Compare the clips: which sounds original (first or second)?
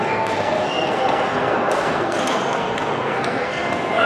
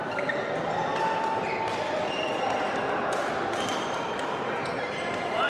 second